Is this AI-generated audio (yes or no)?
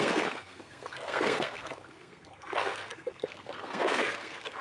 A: yes